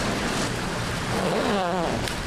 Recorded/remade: recorded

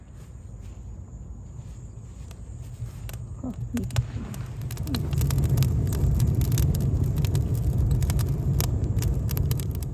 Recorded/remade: recorded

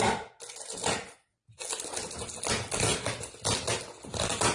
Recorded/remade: recorded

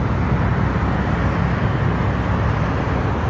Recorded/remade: recorded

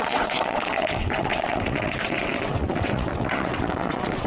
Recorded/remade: remade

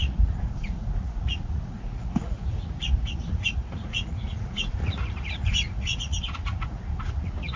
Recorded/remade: remade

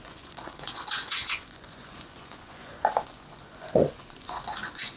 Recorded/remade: remade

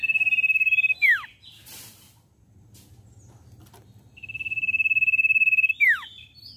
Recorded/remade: recorded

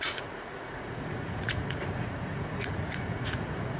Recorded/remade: remade